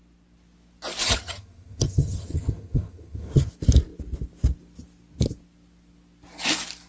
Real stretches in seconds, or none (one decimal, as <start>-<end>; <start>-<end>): 0.0-1.0; 3.5-6.9